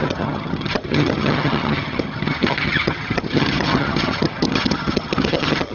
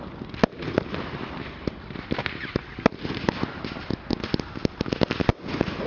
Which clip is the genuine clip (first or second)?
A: second